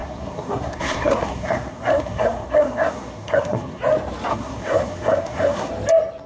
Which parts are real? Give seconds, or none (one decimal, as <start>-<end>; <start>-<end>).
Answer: 3.8-4.3; 5.7-6.3